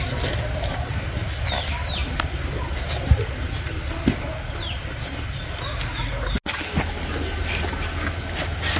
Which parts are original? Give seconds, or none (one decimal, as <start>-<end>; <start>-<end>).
0.0-8.8